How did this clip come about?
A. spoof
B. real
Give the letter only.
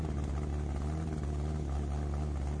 B